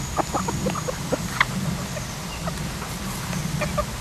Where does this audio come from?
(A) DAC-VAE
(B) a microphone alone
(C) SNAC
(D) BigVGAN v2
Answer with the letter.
B